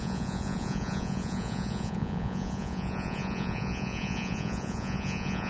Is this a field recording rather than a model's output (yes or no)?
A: no